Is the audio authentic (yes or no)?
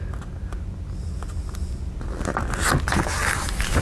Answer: yes